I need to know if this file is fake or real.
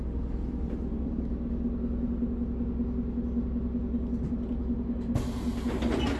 real